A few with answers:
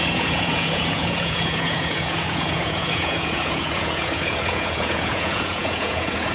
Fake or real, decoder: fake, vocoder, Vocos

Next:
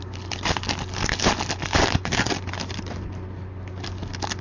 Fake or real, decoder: real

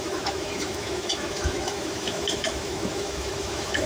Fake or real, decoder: fake, autoencoder, DAC-VAE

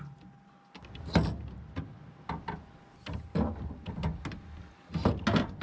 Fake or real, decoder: real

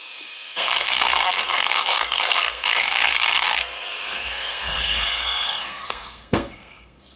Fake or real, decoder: fake, codec, SNAC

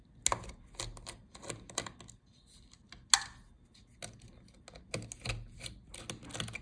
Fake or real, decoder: real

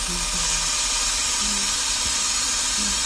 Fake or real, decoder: real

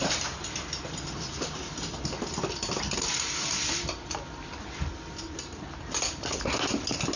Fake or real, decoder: real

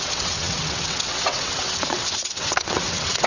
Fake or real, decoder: fake, vocoder, WaveNeXt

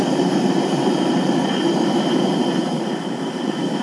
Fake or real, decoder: fake, vocoder, BigVGAN v2